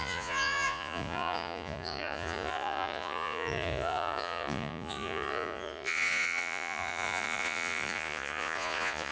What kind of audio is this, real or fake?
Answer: fake